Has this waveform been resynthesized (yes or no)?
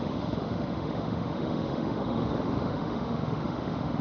yes